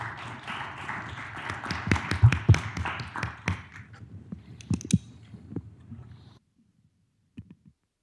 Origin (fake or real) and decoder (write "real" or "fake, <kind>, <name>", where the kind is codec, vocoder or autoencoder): real